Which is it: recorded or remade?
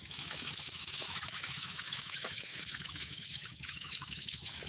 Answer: remade